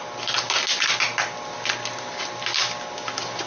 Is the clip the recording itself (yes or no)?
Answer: yes